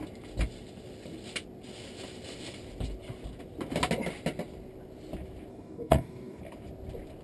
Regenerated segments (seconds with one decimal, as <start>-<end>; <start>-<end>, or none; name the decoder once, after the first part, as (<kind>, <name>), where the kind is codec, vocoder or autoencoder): 5.5-6.4 (codec, DAC)